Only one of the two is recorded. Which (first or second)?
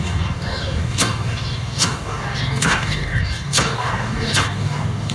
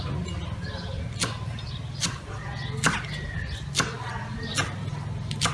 second